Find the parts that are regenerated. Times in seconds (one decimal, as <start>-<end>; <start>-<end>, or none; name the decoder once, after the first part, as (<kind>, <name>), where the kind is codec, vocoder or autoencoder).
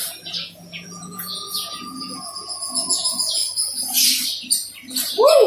0.0-3.4 (vocoder, Vocos); 5.1-5.5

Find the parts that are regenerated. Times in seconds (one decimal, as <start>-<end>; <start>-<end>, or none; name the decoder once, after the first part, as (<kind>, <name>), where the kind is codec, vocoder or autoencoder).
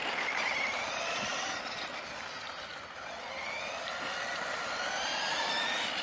none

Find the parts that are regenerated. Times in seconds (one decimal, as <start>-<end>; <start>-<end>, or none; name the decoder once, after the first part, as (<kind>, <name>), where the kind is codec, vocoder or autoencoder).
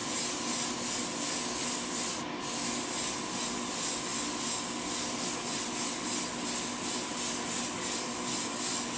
none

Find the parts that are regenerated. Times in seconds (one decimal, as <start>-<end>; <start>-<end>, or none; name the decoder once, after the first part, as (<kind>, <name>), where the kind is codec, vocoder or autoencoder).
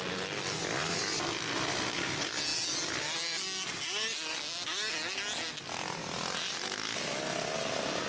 none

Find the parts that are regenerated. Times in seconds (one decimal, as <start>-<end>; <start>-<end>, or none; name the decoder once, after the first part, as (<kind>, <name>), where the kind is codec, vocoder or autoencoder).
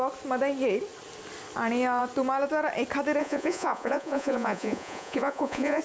3.2-5.8 (vocoder, Vocos)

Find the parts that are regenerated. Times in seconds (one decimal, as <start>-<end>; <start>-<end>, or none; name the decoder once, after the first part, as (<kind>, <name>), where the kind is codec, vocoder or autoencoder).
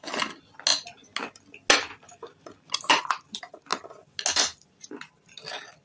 none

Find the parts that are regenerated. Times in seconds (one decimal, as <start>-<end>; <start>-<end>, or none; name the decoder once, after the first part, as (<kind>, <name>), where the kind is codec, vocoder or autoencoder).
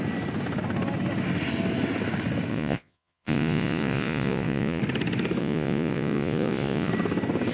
2.5-4.8 (vocoder, Vocos); 5.4-6.9